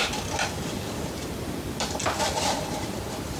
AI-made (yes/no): yes